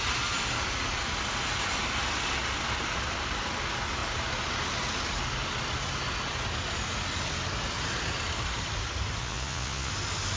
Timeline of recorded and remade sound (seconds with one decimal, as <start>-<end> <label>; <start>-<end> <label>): 0.0-9.2 recorded; 9.2-9.9 remade; 9.9-10.4 recorded